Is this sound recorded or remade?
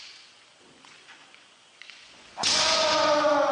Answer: remade